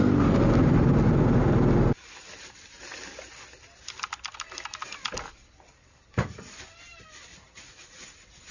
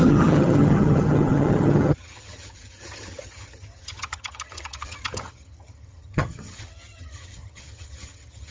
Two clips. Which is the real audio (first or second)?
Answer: first